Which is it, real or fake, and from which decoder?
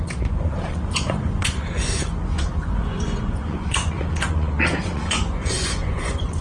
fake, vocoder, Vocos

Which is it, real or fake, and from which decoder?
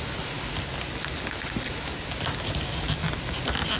real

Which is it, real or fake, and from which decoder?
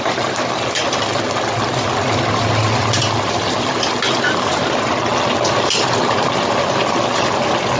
real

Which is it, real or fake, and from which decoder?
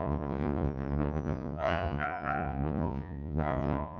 fake, vocoder, Vocos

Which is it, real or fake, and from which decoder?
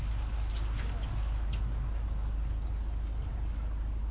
real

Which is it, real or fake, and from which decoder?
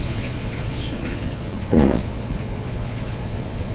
fake, vocoder, Vocos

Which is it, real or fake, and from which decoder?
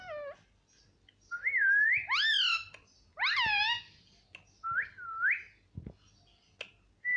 real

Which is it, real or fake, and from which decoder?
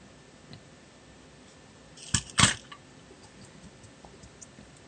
real